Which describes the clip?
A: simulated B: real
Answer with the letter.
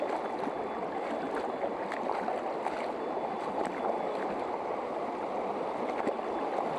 B